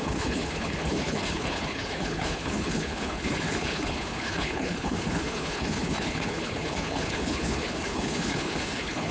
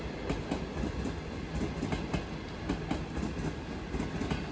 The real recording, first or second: second